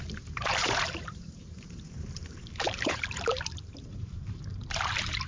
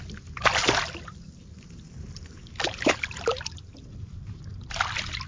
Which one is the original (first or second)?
second